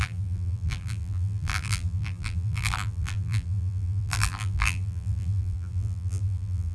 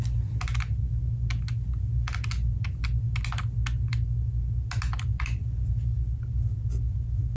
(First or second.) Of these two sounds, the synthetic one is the first